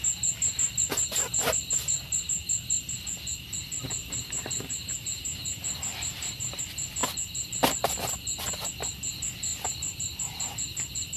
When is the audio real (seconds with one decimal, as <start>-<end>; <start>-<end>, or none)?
0.0-4.0; 6.6-11.2

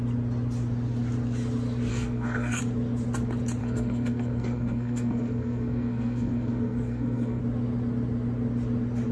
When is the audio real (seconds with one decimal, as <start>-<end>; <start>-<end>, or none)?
0.0-1.9; 2.6-3.6; 7.4-9.1

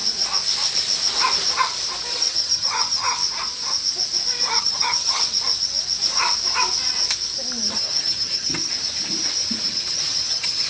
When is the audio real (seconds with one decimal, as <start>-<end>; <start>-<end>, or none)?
0.0-2.1; 3.2-4.6; 5.2-7.6; 8.7-9.7